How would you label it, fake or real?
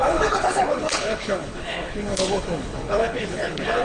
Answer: fake